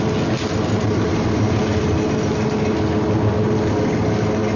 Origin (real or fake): real